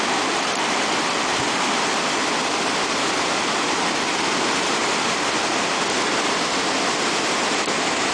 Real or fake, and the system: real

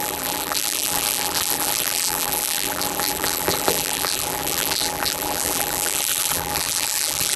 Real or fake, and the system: fake, vocoder, BigVGAN v2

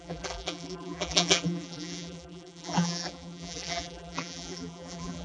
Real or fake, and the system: fake, vocoder, BigVGAN v2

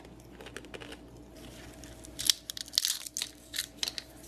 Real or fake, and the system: real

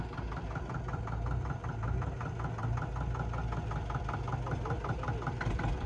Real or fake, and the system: real